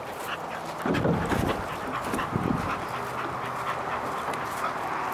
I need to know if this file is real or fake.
real